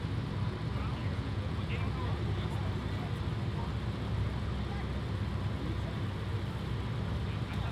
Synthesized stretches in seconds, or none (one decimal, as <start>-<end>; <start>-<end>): 1.0-1.7